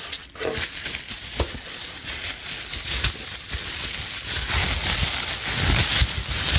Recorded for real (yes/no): yes